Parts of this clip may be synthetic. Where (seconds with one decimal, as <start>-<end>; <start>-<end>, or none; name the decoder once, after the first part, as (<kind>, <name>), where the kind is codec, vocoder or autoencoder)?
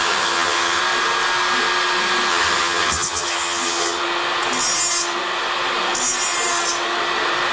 0.0-0.8 (vocoder, HiFi-GAN); 2.3-4.0